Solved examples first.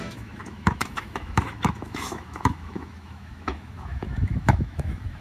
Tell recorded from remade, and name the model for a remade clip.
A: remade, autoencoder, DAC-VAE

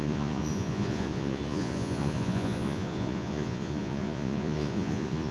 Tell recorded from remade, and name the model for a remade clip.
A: remade, vocoder, Vocos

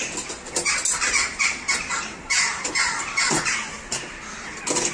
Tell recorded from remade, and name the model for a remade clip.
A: recorded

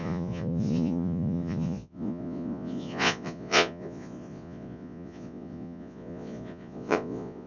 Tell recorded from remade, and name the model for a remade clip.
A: remade, vocoder, Vocos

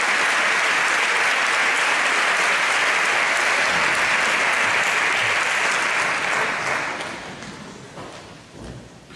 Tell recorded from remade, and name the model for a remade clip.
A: recorded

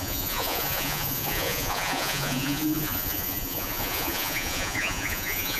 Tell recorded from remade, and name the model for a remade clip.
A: remade, vocoder, Vocos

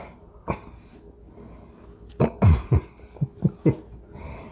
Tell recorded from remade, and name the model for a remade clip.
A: recorded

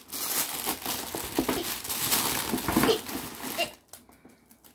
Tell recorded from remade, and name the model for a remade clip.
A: recorded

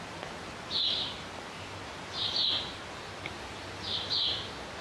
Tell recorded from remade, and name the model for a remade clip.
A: recorded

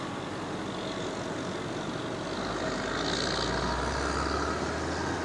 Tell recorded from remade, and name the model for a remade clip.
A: recorded